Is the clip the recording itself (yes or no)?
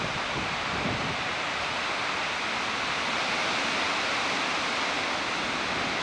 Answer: yes